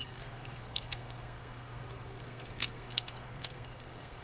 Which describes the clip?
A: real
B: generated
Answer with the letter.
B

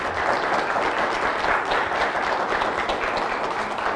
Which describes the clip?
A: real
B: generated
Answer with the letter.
A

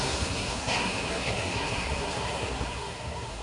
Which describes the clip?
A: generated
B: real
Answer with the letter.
A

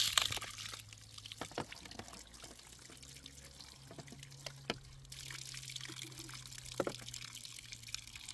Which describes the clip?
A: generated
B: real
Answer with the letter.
B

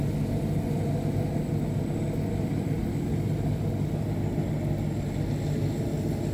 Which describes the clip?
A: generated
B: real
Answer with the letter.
B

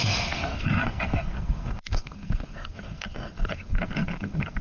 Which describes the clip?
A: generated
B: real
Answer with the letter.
A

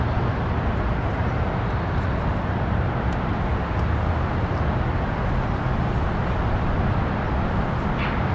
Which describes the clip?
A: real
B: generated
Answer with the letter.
A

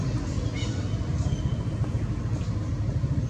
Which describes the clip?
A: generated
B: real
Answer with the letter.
B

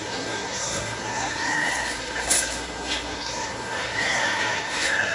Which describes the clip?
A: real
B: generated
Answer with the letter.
B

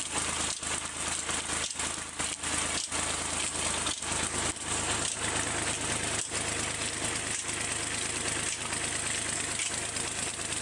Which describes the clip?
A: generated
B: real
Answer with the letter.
B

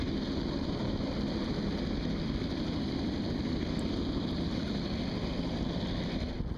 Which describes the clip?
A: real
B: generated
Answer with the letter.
A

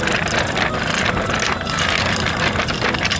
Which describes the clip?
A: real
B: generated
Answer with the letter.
A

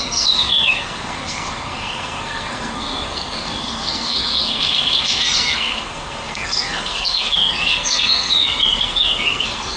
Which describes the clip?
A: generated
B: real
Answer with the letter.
A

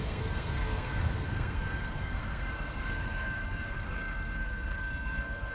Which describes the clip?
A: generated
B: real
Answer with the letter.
A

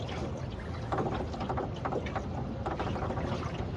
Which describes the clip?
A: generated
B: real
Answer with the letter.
B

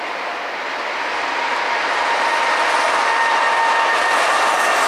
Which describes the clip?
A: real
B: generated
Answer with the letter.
A